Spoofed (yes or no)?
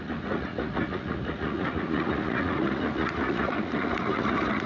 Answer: yes